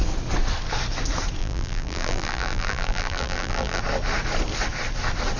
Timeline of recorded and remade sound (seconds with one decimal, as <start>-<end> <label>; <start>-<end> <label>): 0.0-1.4 recorded; 1.4-3.8 remade; 3.8-5.4 recorded